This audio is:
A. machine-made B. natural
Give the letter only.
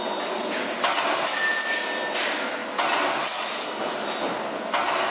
B